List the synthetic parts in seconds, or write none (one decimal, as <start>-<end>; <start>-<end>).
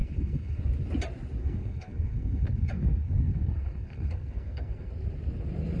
0.0-0.6; 1.4-4.9